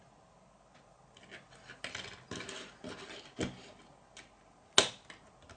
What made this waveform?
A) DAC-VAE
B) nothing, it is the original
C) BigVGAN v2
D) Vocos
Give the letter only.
B